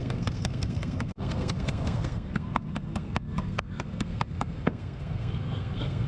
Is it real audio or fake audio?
fake